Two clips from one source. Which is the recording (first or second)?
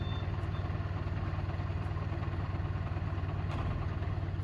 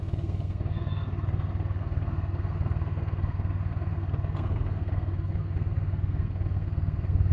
first